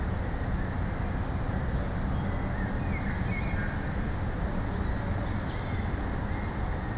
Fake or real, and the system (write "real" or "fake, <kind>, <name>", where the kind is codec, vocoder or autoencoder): real